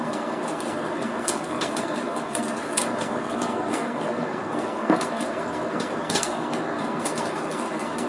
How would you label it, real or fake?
fake